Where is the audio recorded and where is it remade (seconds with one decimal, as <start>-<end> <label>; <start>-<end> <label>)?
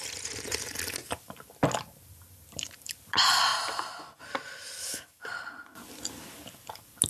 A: 0.0-4.8 recorded; 4.8-5.3 remade; 5.3-7.1 recorded